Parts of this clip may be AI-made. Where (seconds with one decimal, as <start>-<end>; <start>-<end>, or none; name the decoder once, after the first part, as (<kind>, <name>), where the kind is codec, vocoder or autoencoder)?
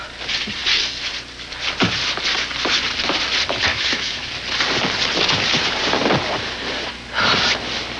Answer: 3.7-4.3 (autoencoder, DAC-VAE)